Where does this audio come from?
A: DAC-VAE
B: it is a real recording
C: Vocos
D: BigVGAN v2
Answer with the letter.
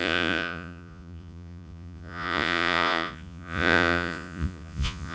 C